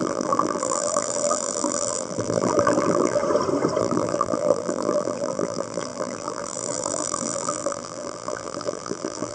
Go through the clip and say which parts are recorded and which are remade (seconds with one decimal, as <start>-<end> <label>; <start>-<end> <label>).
0.0-3.2 remade; 3.2-3.8 recorded; 3.8-9.3 remade